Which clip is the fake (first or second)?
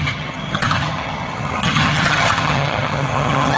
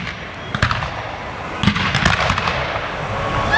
first